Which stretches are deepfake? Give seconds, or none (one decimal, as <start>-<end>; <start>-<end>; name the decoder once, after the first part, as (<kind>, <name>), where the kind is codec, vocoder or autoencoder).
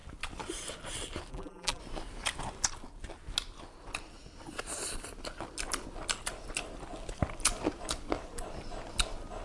1.3-1.8 (vocoder, BigVGAN v2)